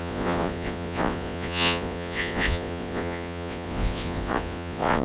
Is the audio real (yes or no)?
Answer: no